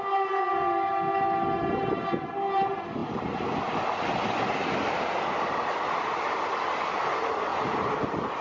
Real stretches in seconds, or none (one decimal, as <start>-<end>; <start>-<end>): 0.0-8.4